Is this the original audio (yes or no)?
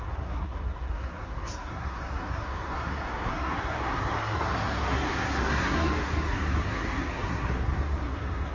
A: no